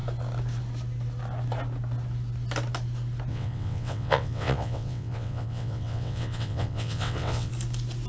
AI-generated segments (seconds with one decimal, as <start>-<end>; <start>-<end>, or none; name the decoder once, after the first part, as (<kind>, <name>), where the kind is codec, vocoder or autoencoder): 3.3-7.5 (vocoder, WaveNeXt)